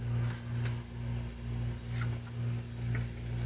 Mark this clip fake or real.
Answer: real